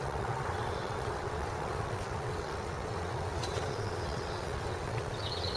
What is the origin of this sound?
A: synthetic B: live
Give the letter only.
A